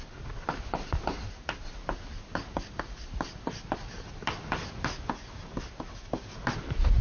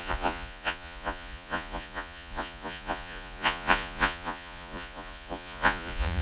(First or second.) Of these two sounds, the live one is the first